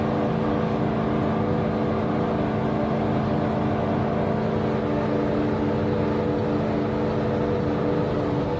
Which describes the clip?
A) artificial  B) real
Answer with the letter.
B